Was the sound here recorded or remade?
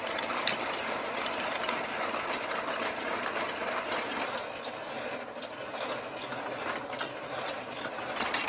recorded